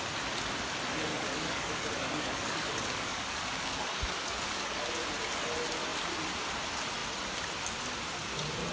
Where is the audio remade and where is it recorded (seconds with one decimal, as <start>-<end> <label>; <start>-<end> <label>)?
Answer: 0.0-1.1 recorded; 1.1-4.8 remade; 4.8-8.7 recorded